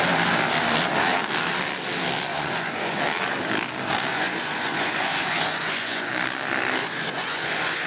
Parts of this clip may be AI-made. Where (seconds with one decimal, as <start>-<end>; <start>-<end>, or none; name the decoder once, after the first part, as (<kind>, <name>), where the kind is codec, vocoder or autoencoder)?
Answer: 2.3-3.0 (vocoder, Vocos); 4.1-6.1; 6.8-7.9